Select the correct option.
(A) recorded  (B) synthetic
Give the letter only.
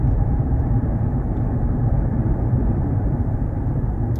B